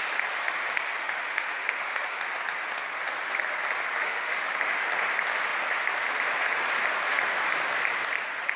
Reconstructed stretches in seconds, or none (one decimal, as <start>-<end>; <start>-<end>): 1.0-2.2; 4.0-4.9